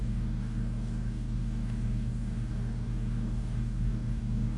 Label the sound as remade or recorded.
remade